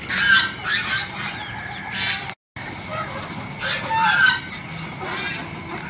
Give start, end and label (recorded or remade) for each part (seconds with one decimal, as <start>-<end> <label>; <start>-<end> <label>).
0.0-5.9 recorded